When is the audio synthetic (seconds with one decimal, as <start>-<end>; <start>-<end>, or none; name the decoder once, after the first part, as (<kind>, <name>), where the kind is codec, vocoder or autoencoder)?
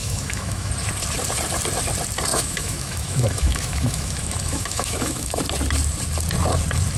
0.0-0.7 (autoencoder, DAC-VAE); 2.3-5.4